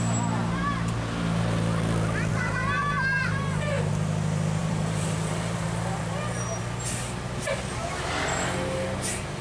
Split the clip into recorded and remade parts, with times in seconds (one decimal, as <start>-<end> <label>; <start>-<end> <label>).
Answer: 0.0-2.3 recorded; 2.3-3.9 remade; 3.9-4.6 recorded; 4.6-6.6 remade; 6.6-9.4 recorded